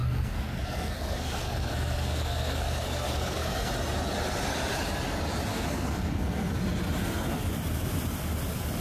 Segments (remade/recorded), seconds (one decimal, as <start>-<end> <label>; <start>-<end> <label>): 0.0-3.7 remade; 3.7-5.5 recorded; 5.5-6.6 remade; 6.6-7.0 recorded; 7.0-7.5 remade; 7.5-8.8 recorded